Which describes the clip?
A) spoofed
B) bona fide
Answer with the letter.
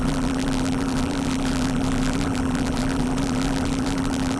A